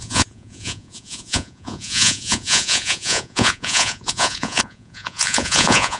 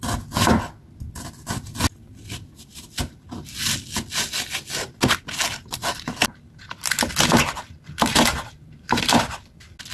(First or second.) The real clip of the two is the second